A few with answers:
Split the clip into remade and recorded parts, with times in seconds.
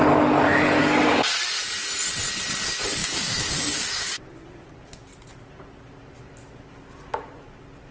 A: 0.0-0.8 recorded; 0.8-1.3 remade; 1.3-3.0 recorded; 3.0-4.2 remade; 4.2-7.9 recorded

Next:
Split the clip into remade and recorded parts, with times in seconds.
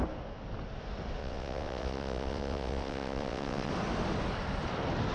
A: 0.0-1.2 recorded; 1.2-3.7 remade; 3.7-5.1 recorded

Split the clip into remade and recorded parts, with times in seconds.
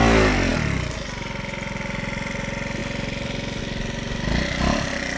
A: 0.0-5.2 recorded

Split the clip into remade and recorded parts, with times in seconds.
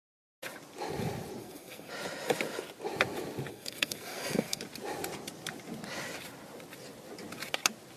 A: 0.0-1.4 recorded; 1.4-1.9 remade; 1.9-3.5 recorded; 3.5-4.6 remade; 4.6-8.0 recorded